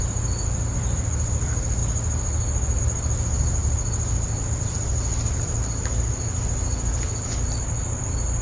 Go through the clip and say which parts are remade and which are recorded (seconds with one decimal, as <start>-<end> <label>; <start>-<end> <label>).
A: 0.0-8.4 recorded